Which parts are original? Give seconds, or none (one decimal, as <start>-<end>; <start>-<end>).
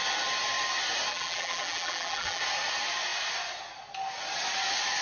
0.0-1.1; 2.4-5.0